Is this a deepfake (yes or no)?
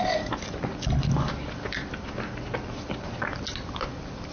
no